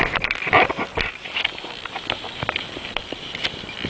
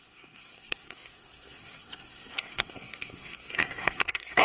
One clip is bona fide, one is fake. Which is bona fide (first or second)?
first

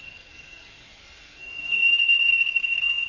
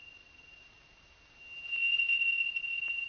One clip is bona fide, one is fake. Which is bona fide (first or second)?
second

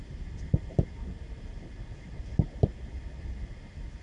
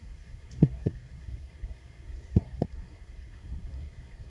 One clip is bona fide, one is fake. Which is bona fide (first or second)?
first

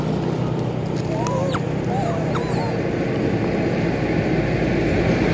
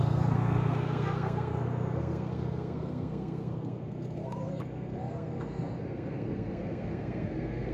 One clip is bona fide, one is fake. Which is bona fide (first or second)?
first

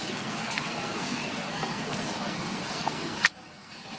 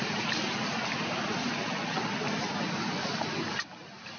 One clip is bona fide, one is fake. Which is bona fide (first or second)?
second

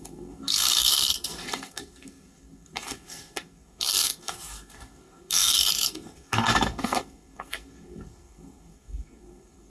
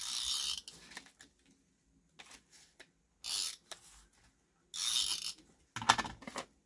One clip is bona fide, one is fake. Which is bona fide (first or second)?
second